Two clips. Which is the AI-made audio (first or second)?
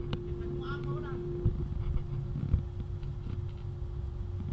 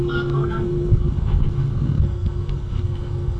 second